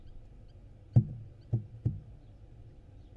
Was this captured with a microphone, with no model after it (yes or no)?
yes